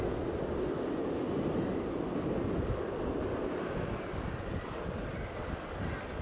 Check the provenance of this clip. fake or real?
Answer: real